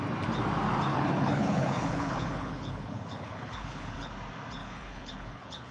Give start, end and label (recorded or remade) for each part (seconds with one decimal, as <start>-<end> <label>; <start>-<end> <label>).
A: 0.0-0.9 recorded; 0.9-4.1 remade; 4.1-4.6 recorded; 4.6-5.7 remade